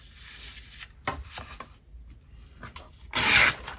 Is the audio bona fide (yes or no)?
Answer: yes